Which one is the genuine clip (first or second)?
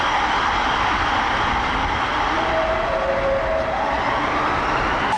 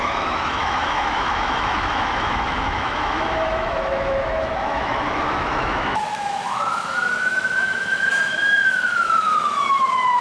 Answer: first